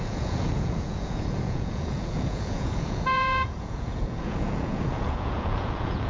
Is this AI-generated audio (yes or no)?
yes